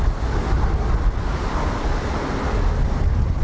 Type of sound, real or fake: real